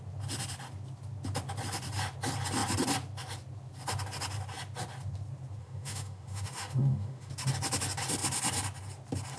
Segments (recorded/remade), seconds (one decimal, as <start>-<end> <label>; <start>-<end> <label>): 0.0-5.6 recorded; 5.6-7.3 remade; 7.3-9.4 recorded